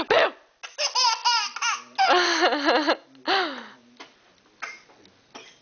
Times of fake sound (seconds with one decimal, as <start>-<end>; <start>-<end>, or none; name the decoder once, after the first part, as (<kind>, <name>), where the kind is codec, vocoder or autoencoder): none